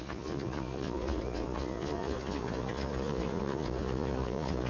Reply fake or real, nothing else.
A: fake